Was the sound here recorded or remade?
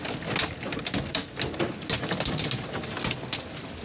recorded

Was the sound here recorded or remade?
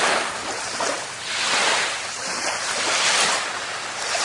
recorded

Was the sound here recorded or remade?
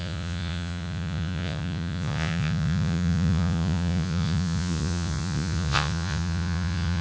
remade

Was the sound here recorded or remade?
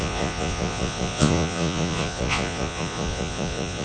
remade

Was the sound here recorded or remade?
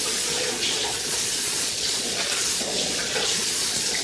remade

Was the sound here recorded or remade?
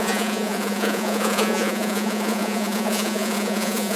remade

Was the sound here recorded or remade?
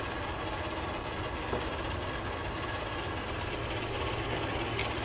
recorded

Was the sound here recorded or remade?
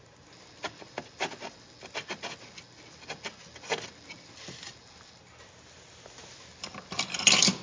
recorded